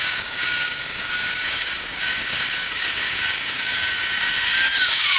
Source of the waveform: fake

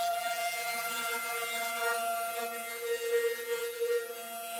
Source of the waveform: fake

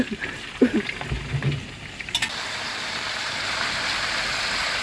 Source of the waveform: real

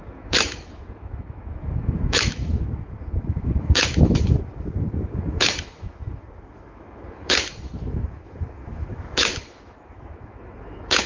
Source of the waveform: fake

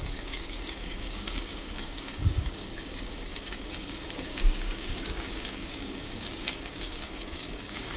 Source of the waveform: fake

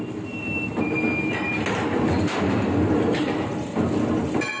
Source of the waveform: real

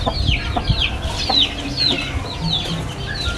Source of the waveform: real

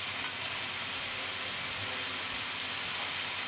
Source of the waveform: real